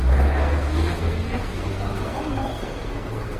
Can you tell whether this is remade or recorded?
remade